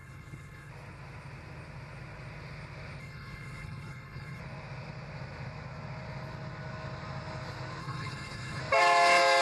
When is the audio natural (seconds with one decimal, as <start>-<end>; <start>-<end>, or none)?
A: 0.7-3.0; 4.4-7.8; 8.6-9.4